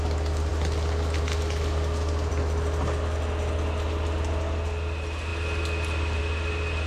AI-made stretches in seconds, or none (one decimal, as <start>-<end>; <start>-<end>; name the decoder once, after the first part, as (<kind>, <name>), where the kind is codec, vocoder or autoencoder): none